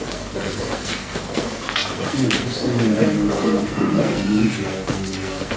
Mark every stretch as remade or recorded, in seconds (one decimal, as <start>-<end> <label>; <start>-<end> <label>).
0.0-5.6 remade